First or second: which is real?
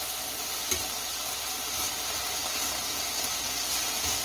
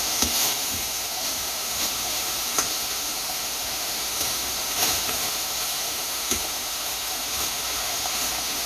first